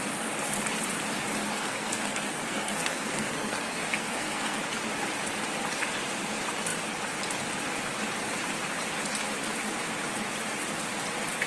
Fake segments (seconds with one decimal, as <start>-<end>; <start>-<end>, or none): 1.5-4.6

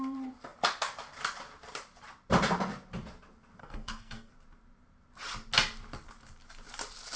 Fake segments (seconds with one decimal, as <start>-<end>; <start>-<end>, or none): 3.6-4.3

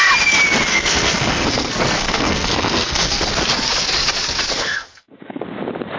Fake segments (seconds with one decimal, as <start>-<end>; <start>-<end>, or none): 0.7-3.2; 4.5-5.4

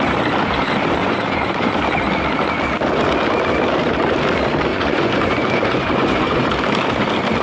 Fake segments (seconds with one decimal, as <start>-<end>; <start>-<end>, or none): 1.0-1.7; 4.7-6.4

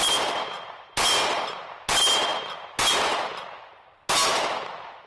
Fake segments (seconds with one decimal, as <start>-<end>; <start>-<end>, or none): 2.3-3.9; 4.3-5.1

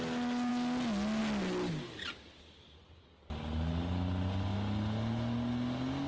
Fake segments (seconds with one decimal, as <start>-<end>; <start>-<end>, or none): none

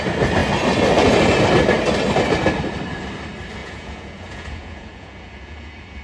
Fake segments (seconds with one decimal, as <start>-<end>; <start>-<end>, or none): 3.6-6.0